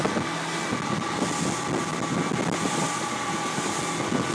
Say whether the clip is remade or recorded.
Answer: recorded